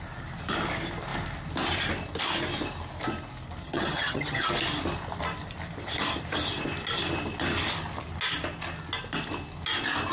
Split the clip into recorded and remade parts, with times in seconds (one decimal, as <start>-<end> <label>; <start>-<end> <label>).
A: 0.0-3.6 recorded; 3.6-4.5 remade; 4.5-10.1 recorded